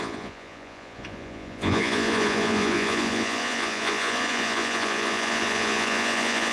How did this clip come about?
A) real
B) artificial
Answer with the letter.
B